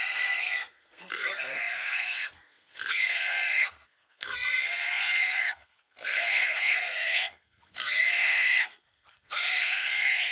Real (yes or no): no